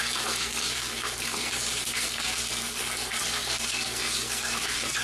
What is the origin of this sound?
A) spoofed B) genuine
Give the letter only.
A